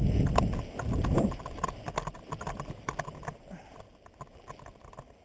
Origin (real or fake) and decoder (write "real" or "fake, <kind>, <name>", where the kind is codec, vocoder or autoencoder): real